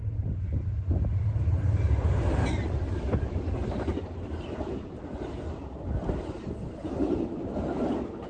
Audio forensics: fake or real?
real